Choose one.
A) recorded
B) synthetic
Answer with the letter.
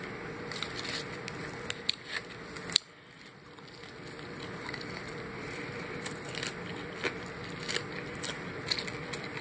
A